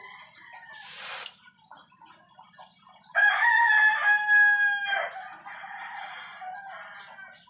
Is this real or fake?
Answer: real